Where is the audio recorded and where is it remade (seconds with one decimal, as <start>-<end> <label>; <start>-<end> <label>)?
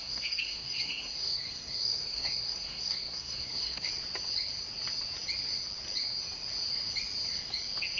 0.0-3.9 remade; 3.9-8.0 recorded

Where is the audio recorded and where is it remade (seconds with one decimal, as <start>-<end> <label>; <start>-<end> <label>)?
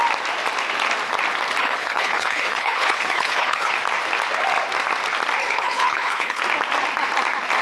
0.0-1.6 recorded; 1.6-3.7 remade; 3.7-5.4 recorded; 5.4-6.4 remade; 6.4-7.6 recorded